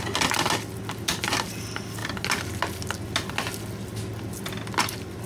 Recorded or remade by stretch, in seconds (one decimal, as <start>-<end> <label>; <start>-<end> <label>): 0.0-5.3 recorded